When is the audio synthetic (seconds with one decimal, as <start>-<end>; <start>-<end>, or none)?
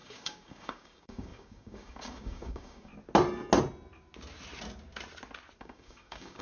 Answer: 0.0-2.9; 5.6-6.4